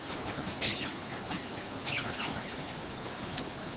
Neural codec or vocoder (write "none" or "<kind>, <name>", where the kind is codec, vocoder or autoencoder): codec, HILCodec